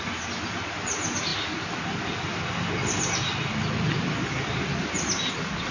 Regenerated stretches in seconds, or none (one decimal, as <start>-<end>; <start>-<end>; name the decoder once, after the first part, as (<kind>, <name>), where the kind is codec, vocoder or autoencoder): none